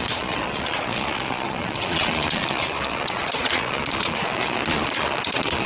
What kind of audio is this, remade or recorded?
remade